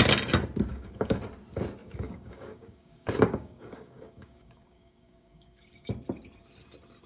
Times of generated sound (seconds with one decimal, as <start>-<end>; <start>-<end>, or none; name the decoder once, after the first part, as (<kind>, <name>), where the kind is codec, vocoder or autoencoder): 0.7-1.2 (codec, DAC); 1.8-5.9

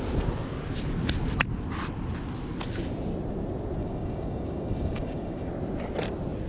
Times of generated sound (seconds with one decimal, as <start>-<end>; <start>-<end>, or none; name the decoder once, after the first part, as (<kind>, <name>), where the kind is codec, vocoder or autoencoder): 3.8-5.5 (codec, DAC)

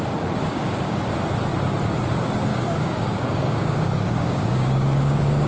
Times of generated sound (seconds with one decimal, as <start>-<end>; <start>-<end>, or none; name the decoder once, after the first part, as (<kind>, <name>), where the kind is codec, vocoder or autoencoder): 0.5-1.1 (codec, DAC); 2.5-5.5

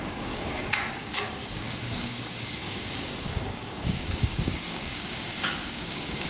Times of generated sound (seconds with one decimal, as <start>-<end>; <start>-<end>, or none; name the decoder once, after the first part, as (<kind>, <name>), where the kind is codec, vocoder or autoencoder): 0.0-6.3 (codec, DAC)

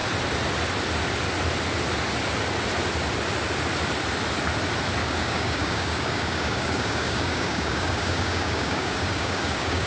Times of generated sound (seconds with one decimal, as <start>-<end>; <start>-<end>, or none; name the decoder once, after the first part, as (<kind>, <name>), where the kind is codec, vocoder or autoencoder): 5.0-9.9 (codec, DAC)

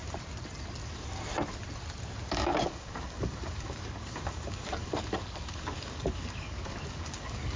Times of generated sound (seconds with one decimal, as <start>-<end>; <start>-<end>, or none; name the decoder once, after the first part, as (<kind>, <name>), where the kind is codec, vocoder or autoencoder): 2.3-7.6 (codec, DAC)

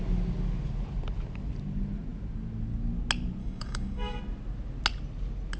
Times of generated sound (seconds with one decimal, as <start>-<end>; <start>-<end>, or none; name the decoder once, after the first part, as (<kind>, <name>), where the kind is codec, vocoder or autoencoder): 3.4-4.2 (codec, DAC)

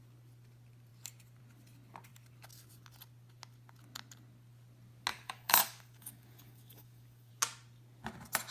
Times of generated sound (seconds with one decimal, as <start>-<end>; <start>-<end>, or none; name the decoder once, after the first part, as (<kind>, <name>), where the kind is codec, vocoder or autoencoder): 5.1-7.3 (codec, DAC)